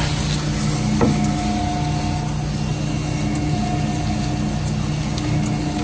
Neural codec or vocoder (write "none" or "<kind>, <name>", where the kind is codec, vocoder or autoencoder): none